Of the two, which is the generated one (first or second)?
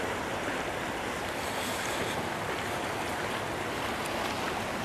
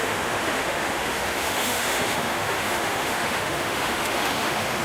second